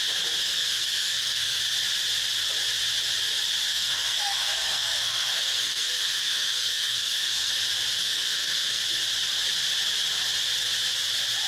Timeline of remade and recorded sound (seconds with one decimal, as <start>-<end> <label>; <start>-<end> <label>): 0.0-0.4 recorded; 0.4-1.6 remade; 1.6-3.7 recorded; 3.7-7.5 remade; 7.5-8.0 recorded; 8.0-8.8 remade; 8.8-11.5 recorded